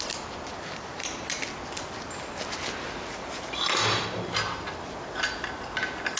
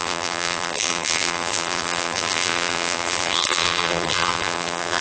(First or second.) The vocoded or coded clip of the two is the second